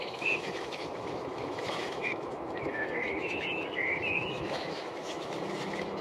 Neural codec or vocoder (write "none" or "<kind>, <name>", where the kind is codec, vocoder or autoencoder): autoencoder, DAC-VAE